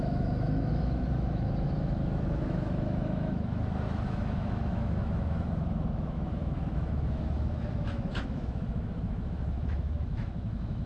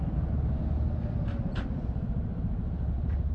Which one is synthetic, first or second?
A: first